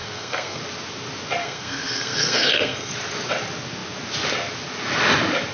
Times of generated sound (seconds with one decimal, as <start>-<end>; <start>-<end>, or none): 0.0-0.6; 1.4-2.9